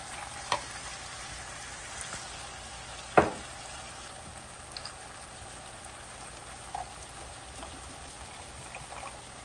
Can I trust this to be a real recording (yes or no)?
yes